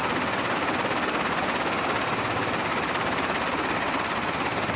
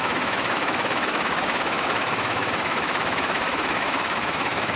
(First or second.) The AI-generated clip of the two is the second